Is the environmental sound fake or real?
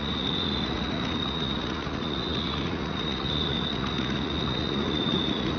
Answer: fake